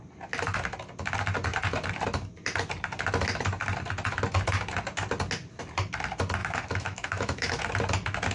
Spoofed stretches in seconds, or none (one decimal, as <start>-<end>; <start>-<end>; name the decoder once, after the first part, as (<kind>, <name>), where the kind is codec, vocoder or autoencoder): 6.4-7.6 (autoencoder, DAC-VAE)